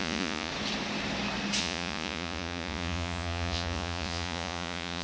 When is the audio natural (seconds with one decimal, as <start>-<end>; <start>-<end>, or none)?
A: 0.5-1.6